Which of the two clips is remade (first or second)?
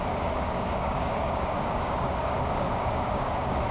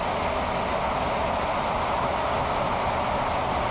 first